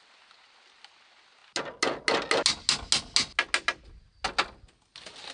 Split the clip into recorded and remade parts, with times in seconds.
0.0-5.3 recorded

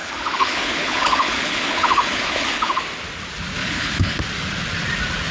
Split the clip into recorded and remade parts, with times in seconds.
0.0-2.8 remade; 2.8-3.6 recorded; 3.6-4.2 remade; 4.2-5.3 recorded